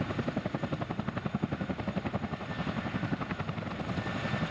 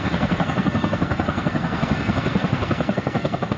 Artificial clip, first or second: second